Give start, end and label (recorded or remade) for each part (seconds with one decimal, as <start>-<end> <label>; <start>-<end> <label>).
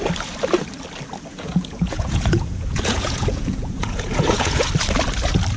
0.0-1.3 recorded; 1.3-4.7 remade; 4.7-5.6 recorded